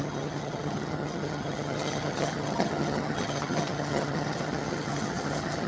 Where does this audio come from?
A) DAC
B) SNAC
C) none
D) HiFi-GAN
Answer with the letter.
D